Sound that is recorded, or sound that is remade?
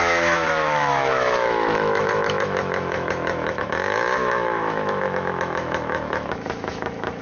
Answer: remade